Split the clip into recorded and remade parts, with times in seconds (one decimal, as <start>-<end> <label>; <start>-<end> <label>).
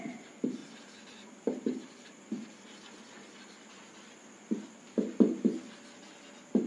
0.0-6.7 recorded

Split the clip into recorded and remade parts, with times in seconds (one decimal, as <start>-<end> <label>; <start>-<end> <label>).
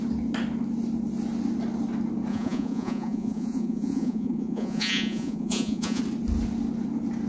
0.0-2.3 recorded; 2.3-6.0 remade; 6.0-7.3 recorded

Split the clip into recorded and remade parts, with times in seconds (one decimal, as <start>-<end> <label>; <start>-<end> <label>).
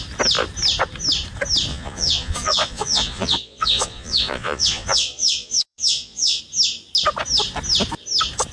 0.0-1.7 recorded; 1.7-6.4 remade; 6.4-8.5 recorded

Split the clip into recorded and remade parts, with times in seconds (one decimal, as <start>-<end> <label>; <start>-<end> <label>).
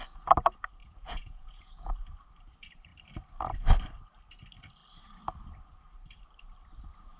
0.0-0.8 recorded; 0.8-1.9 remade; 1.9-7.2 recorded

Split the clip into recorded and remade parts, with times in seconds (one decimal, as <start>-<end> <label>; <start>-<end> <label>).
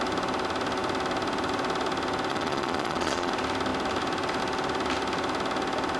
0.0-2.3 recorded; 2.3-3.3 remade; 3.3-6.0 recorded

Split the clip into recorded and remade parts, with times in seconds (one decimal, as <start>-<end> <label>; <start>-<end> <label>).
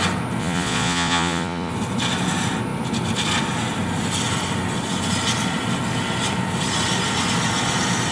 0.0-0.4 recorded; 0.4-1.7 remade; 1.7-8.1 recorded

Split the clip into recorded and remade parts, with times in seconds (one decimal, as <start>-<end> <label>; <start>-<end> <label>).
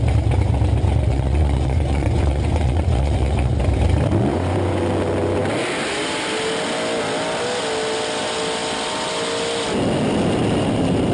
0.0-1.1 recorded; 1.1-3.6 remade; 3.6-4.3 recorded; 4.3-4.8 remade; 4.8-11.1 recorded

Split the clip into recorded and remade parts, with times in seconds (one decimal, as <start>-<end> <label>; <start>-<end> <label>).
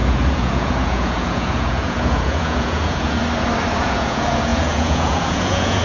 0.0-3.2 remade; 3.2-3.8 recorded; 3.8-5.8 remade